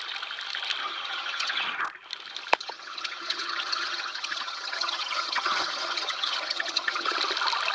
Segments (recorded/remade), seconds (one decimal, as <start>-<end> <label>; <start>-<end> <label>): 0.0-0.8 recorded; 0.8-1.8 remade; 1.8-2.6 recorded; 2.6-7.2 remade; 7.2-7.7 recorded